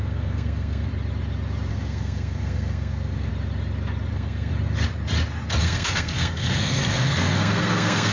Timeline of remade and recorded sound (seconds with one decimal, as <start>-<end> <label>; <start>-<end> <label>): 0.0-0.9 remade; 0.9-1.7 recorded; 1.7-3.3 remade; 3.3-4.1 recorded; 4.1-4.5 remade; 4.5-5.6 recorded; 5.6-8.1 remade

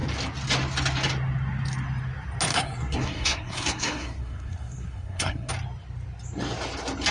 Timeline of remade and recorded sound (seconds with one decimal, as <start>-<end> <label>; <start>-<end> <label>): 0.0-2.5 recorded; 2.5-5.5 remade; 5.5-7.1 recorded